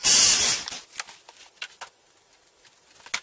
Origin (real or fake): real